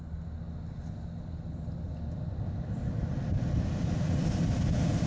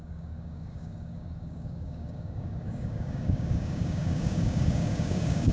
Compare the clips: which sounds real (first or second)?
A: first